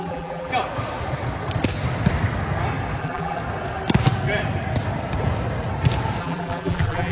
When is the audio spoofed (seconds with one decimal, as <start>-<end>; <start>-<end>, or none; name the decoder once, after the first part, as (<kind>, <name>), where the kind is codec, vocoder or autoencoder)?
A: 0.0-0.5 (vocoder, BigVGAN v2); 3.0-3.4; 6.2-7.1